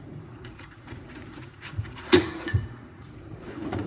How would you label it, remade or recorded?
remade